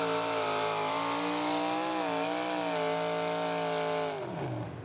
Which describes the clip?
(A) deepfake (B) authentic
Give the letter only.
B